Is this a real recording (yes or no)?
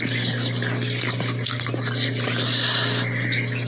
yes